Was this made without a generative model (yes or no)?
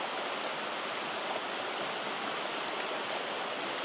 yes